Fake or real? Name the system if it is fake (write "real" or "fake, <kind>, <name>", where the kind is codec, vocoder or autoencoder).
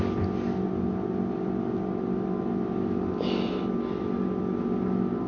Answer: real